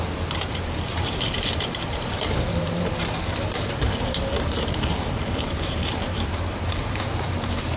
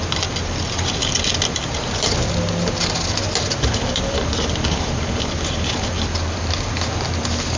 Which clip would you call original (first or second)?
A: second